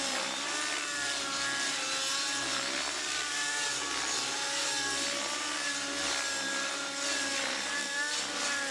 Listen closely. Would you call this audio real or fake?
real